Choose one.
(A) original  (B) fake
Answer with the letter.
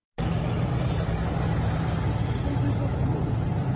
A